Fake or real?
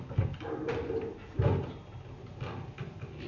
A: real